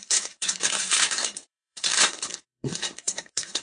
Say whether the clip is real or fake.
fake